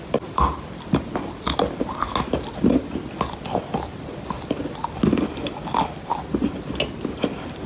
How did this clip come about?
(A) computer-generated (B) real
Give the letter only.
B